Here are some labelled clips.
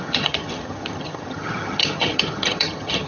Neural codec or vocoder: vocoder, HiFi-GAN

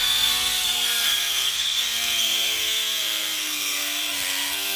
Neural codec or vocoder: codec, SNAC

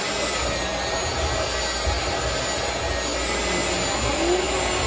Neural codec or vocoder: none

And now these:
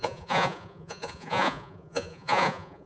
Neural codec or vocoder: vocoder, Vocos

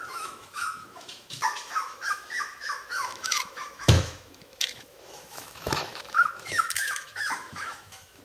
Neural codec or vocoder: autoencoder, DAC-VAE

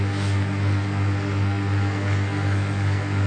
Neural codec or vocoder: codec, SNAC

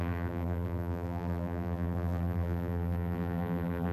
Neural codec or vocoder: vocoder, BigVGAN v2